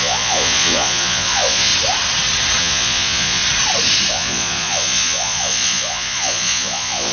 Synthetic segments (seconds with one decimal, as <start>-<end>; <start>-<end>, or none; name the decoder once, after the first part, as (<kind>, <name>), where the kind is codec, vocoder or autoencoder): 0.0-1.7 (vocoder, Vocos); 2.6-3.4; 4.1-7.1